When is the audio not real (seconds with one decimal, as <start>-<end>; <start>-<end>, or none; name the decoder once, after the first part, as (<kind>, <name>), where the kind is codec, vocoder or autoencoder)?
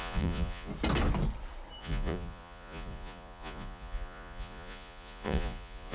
0.0-0.7 (vocoder, Vocos); 1.8-5.9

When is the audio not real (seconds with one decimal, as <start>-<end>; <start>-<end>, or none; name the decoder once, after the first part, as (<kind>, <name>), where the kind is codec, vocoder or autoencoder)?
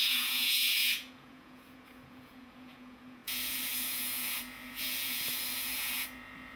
0.0-6.6 (vocoder, Vocos)